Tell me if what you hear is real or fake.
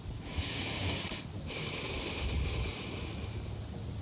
real